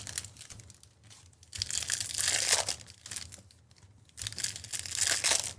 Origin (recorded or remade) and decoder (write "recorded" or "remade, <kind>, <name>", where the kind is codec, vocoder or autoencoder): recorded